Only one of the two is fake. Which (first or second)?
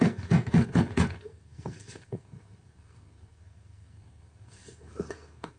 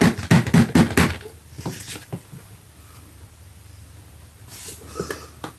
first